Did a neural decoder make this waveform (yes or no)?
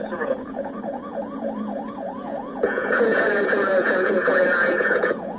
yes